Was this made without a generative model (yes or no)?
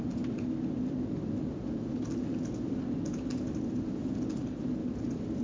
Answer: yes